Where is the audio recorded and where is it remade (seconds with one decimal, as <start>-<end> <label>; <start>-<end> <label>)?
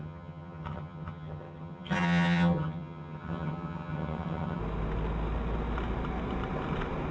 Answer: 0.0-4.6 remade; 4.6-7.1 recorded